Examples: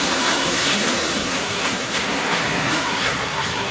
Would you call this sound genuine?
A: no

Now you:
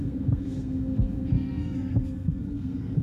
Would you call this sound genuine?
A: no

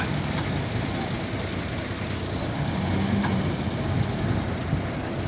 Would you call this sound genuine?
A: yes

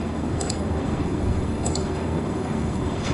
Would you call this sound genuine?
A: no